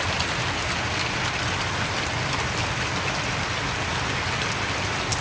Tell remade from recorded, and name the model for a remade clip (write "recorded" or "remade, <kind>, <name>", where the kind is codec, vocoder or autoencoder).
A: recorded